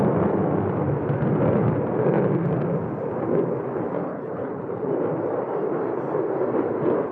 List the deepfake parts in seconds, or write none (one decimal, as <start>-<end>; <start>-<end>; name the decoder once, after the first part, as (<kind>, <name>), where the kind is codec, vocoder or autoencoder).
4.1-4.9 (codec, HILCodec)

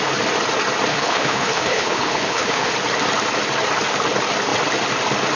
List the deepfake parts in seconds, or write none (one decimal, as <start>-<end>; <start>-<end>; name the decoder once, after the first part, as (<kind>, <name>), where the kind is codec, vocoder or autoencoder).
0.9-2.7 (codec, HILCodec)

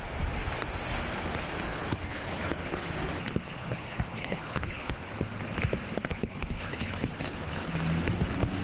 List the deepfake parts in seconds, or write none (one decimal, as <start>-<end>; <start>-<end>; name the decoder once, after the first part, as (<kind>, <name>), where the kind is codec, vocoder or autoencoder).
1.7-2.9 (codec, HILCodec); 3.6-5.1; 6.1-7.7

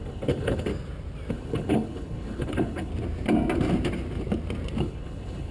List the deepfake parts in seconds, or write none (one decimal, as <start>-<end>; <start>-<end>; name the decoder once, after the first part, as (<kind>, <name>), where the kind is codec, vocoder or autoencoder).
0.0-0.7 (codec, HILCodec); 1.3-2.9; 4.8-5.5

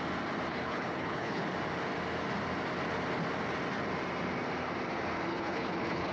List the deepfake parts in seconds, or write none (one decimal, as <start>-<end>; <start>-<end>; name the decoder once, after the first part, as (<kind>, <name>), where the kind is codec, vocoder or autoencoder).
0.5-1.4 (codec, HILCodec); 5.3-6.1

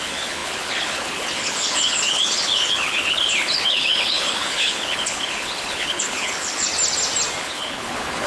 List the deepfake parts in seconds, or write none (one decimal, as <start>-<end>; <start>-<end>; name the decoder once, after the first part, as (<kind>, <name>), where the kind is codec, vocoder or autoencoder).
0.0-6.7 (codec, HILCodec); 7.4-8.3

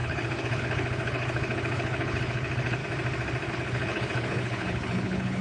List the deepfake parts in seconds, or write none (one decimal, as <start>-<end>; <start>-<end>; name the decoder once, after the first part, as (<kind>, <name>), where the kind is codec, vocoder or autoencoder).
0.0-2.8 (codec, HILCodec); 3.5-5.4